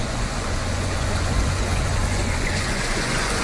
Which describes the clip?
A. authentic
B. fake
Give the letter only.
B